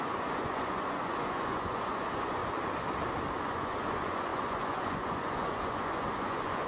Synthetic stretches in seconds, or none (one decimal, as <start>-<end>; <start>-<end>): 0.0-2.4; 3.4-6.7